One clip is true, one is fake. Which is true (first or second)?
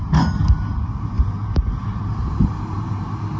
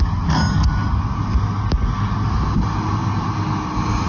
second